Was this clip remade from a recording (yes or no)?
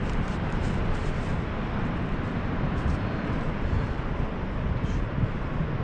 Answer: no